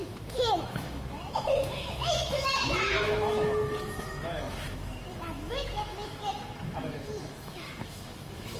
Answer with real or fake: fake